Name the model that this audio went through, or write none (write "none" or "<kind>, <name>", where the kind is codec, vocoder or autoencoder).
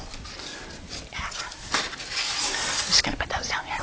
none